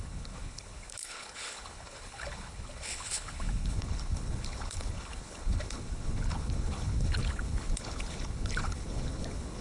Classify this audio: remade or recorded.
remade